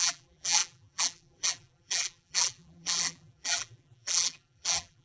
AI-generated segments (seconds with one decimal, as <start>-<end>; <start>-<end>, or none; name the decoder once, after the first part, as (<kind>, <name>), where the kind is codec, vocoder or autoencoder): 0.0-5.0 (vocoder, BigVGAN v2)